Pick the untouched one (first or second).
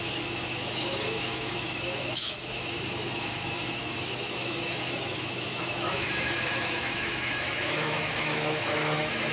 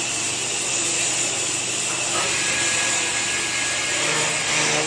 second